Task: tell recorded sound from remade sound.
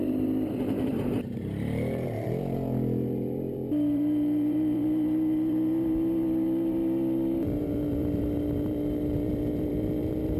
remade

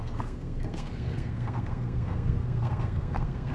remade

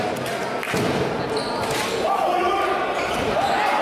recorded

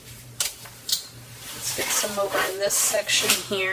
remade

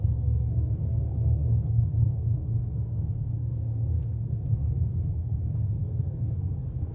remade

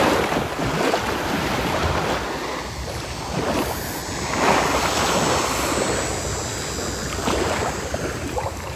recorded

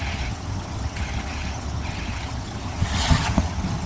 remade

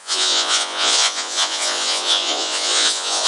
remade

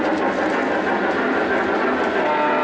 recorded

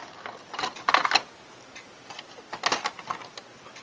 recorded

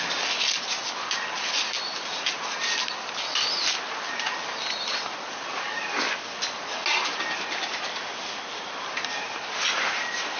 recorded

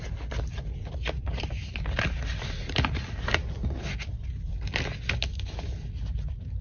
recorded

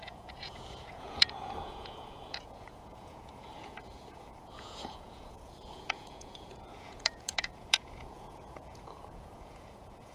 remade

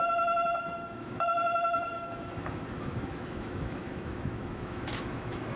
remade